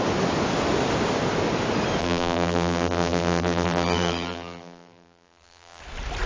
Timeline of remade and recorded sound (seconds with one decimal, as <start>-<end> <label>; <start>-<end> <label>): 0.0-2.0 recorded; 2.0-5.8 remade; 5.8-6.3 recorded